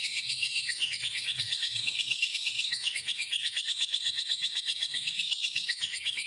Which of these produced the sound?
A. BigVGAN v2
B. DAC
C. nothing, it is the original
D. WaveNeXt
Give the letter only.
B